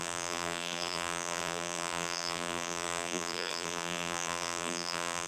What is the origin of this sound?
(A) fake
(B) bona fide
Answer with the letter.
A